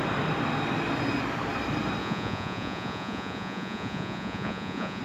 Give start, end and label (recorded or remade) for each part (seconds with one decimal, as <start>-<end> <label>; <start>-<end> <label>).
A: 0.0-2.0 recorded; 2.0-5.0 remade